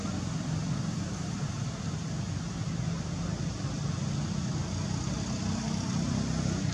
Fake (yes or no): no